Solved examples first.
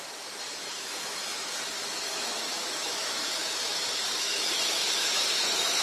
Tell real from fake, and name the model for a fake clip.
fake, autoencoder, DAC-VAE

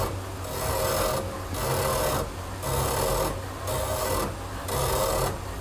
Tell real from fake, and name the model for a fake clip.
real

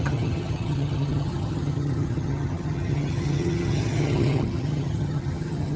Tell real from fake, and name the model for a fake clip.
fake, vocoder, HiFi-GAN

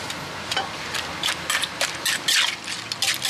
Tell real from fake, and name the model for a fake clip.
real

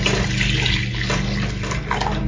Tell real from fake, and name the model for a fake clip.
real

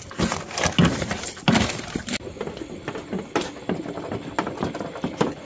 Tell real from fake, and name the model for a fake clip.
real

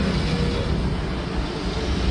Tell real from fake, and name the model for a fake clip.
real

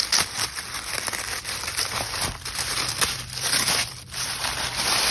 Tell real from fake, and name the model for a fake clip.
fake, vocoder, BigVGAN v2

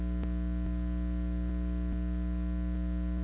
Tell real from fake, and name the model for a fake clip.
real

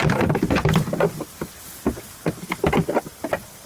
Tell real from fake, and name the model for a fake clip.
real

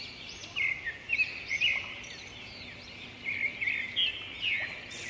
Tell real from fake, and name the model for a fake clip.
real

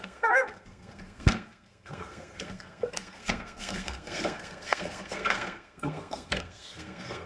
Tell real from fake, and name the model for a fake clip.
fake, codec, SNAC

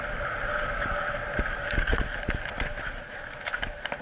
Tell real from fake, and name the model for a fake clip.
real